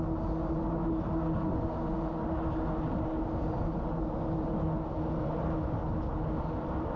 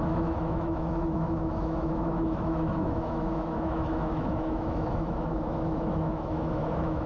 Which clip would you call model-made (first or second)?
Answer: second